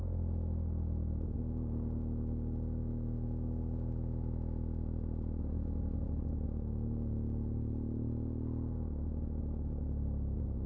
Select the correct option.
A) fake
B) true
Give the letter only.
B